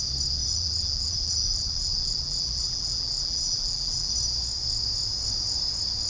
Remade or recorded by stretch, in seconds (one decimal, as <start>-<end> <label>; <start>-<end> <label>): 0.0-0.4 recorded; 0.4-4.1 remade; 4.1-6.1 recorded